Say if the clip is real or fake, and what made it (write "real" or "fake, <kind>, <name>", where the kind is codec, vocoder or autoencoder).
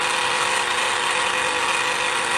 real